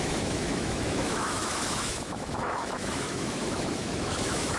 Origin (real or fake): fake